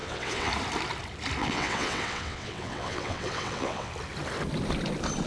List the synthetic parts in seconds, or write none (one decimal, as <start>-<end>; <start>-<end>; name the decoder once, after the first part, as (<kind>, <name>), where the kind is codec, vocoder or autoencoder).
0.0-0.5 (vocoder, WaveNeXt); 1.4-3.9